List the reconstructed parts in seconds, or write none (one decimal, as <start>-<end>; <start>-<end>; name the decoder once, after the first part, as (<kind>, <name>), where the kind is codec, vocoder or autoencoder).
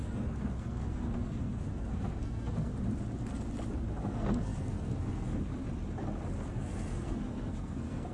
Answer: 0.0-2.7 (codec, SNAC); 3.9-5.5; 6.5-8.1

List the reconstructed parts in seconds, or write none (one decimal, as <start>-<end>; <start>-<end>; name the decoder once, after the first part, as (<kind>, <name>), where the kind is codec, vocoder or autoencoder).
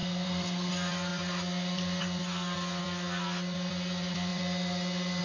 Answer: 0.0-0.7 (codec, SNAC)